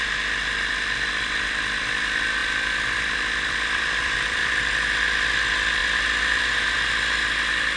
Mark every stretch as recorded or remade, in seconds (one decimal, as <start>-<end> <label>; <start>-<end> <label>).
0.0-2.4 recorded; 2.4-4.7 remade; 4.7-7.8 recorded